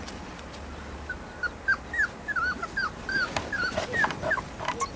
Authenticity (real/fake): real